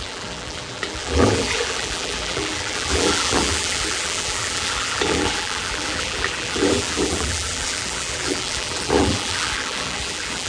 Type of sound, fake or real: fake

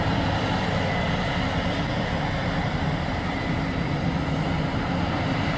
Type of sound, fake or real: fake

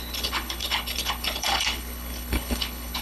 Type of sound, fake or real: fake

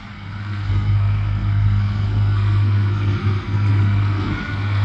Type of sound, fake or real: fake